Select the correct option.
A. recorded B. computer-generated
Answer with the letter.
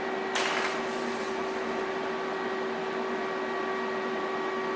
A